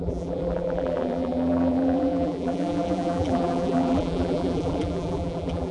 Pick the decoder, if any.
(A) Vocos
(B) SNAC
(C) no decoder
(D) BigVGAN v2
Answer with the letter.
D